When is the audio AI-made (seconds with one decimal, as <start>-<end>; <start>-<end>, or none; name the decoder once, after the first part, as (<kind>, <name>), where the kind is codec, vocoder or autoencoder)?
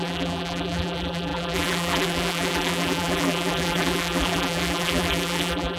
0.0-5.8 (vocoder, BigVGAN v2)